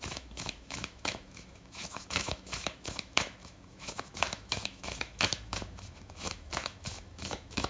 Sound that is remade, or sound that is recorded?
remade